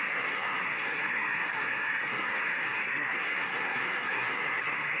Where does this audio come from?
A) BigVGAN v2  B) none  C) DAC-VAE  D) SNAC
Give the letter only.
D